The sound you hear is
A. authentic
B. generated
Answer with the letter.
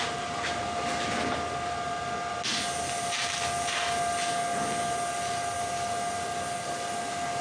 A